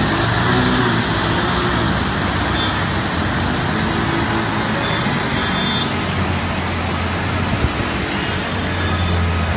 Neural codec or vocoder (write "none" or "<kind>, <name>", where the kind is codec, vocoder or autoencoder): none